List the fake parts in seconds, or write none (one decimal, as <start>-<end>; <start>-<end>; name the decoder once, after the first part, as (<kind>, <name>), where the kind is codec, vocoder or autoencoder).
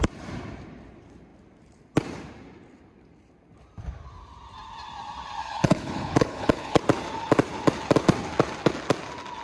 5.4-6.8 (codec, HILCodec)